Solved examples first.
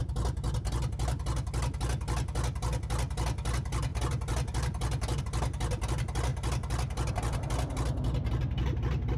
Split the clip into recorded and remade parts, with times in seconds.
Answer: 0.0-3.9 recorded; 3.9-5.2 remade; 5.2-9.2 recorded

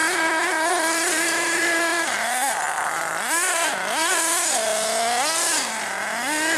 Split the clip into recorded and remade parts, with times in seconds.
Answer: 0.0-4.7 remade; 4.7-6.6 recorded